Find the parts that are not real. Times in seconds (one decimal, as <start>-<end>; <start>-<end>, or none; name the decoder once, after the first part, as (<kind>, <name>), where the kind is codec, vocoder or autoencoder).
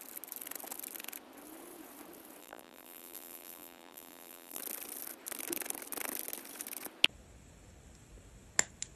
2.4-4.6 (vocoder, BigVGAN v2)